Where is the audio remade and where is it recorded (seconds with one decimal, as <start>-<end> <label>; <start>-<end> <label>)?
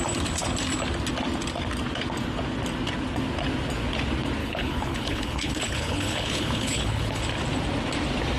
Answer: 0.0-4.4 recorded; 4.4-7.2 remade; 7.2-8.4 recorded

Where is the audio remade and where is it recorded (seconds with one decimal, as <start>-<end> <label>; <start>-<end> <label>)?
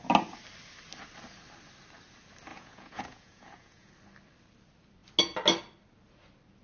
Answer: 0.0-2.5 recorded; 2.5-3.9 remade; 3.9-6.6 recorded